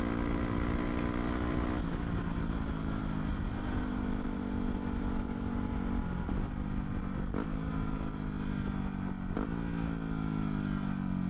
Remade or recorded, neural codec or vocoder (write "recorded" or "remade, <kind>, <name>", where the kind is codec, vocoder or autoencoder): recorded